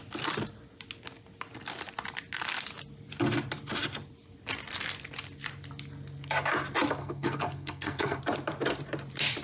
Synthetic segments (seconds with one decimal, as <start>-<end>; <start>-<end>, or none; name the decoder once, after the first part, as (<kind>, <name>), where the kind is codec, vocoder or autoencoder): 7.0-8.2 (codec, SNAC)